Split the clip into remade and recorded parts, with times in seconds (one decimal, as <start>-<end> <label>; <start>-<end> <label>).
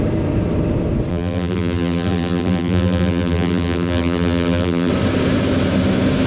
0.0-1.1 recorded; 1.1-4.9 remade; 4.9-6.3 recorded